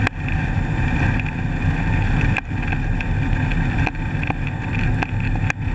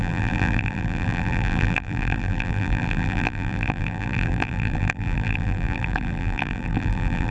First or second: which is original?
first